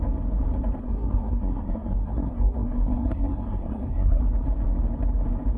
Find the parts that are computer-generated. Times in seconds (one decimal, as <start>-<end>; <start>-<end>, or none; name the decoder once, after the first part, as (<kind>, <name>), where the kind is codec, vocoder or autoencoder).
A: 0.8-4.2 (codec, SNAC)